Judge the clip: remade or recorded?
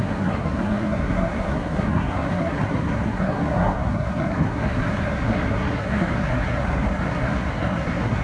remade